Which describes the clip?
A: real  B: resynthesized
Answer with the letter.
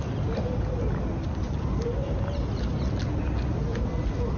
A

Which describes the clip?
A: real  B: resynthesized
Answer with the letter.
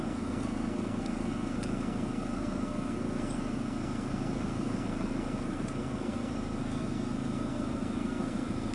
B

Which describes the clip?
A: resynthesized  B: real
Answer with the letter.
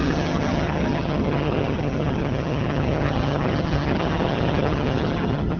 A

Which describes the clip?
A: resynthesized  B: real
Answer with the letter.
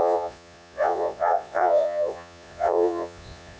A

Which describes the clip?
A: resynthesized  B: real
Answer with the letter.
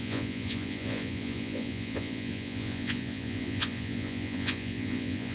A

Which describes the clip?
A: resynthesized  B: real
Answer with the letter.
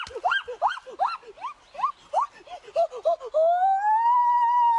B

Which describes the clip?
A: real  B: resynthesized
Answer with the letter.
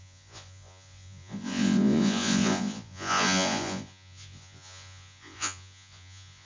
B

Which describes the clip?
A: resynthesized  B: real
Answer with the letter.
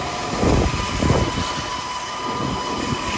B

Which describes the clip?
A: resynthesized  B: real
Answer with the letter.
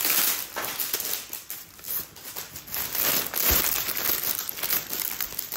B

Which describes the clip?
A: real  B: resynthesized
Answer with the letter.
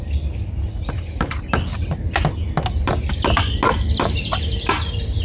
A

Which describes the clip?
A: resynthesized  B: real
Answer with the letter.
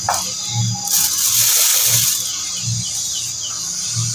B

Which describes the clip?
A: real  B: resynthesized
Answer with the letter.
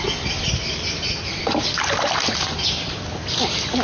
A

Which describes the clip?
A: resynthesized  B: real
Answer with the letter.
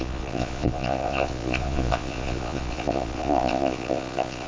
A